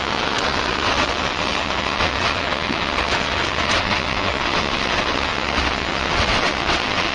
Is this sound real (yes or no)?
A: no